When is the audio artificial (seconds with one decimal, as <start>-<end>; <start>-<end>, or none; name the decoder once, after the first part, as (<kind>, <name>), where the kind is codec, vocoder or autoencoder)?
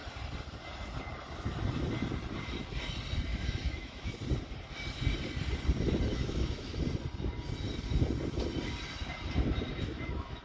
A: 3.3-4.1 (autoencoder, DAC-VAE); 6.1-6.7; 9.7-10.4